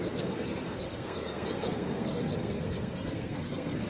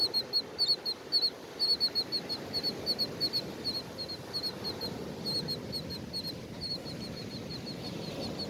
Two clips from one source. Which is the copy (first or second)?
first